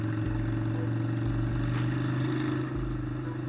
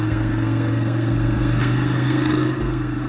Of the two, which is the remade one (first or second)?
second